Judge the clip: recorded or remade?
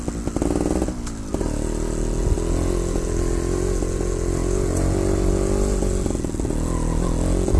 recorded